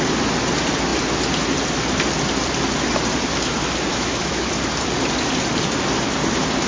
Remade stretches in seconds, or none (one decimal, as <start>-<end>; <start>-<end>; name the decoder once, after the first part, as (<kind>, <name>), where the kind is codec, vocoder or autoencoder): 3.9-4.5 (autoencoder, DAC-VAE)

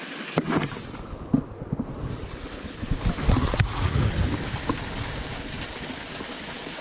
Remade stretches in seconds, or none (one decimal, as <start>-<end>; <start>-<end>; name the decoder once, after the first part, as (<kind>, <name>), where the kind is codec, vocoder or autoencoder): 3.4-4.0 (vocoder, Vocos)

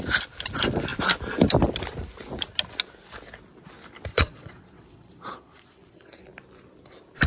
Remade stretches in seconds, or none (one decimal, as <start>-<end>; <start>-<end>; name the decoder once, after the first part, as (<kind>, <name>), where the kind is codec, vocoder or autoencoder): 4.1-6.2 (vocoder, Vocos)

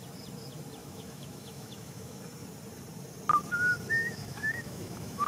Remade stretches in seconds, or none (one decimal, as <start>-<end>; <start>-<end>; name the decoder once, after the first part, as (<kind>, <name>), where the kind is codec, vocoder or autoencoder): 0.8-2.2 (autoencoder, DAC-VAE); 4.0-5.3

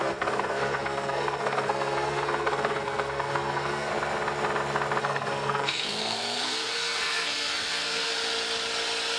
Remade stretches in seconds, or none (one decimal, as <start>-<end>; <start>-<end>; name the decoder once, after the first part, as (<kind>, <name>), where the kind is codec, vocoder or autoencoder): 0.0-3.9 (codec, SNAC); 5.0-8.1